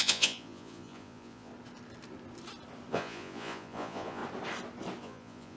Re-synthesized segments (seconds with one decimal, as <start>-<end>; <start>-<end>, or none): 0.0-1.5; 2.9-4.2; 5.0-5.6